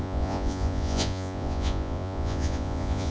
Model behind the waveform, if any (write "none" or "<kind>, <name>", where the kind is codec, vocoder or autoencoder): vocoder, Vocos